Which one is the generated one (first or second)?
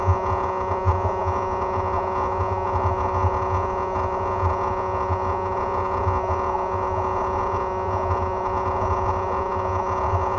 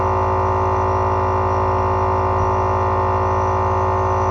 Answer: first